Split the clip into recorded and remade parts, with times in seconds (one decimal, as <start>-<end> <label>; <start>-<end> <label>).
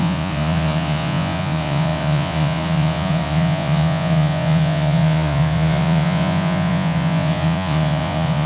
0.0-8.5 remade